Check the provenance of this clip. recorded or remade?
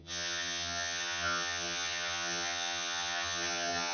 remade